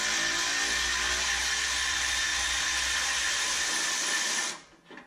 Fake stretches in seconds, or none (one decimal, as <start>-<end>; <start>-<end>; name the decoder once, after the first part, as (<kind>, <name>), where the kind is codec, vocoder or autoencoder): none